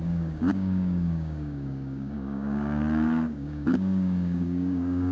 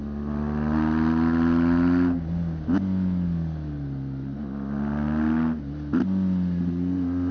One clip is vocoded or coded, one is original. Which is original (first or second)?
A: second